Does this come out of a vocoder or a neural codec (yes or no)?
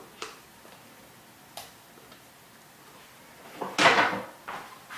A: no